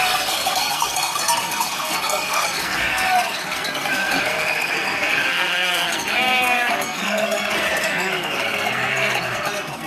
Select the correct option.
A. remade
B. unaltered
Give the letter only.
A